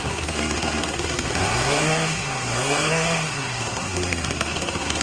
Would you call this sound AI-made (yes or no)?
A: yes